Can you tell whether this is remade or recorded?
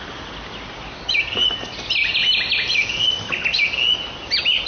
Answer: recorded